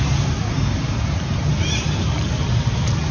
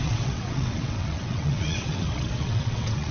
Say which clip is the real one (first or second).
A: first